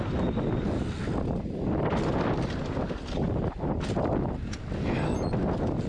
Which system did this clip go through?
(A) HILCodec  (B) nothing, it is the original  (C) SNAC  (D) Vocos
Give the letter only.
B